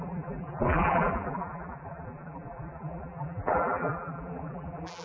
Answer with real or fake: fake